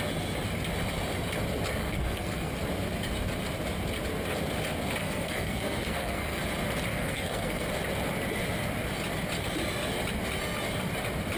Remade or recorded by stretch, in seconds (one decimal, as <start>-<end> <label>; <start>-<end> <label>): 0.0-1.8 recorded; 1.8-2.5 remade; 2.5-5.0 recorded; 5.0-6.4 remade; 6.4-6.9 recorded; 6.9-7.7 remade; 7.7-11.4 recorded